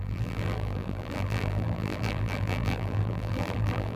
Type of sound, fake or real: fake